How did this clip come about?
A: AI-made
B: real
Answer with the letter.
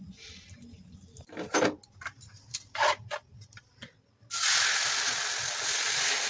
B